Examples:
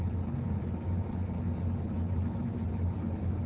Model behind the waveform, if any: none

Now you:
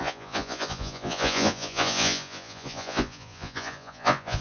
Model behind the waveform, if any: vocoder, Vocos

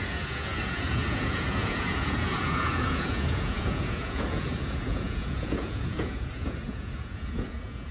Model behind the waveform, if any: vocoder, Vocos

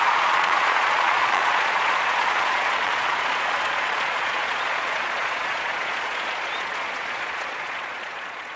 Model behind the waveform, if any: vocoder, Vocos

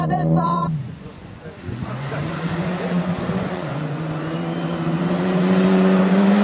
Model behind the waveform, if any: vocoder, Vocos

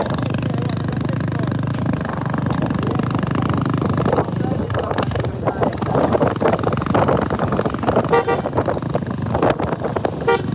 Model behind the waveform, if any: none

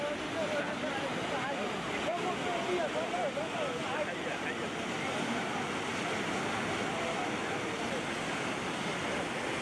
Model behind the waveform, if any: none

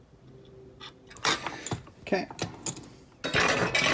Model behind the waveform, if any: none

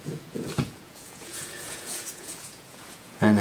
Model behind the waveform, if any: vocoder, Vocos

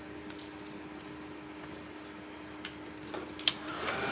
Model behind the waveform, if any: none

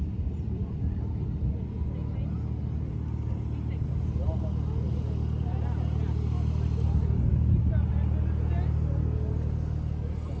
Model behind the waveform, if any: none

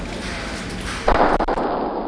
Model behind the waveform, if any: none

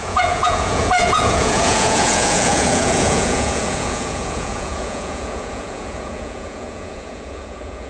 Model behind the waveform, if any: vocoder, Vocos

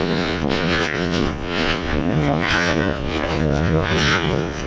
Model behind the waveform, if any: vocoder, Vocos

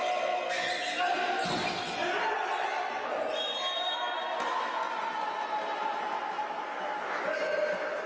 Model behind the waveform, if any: none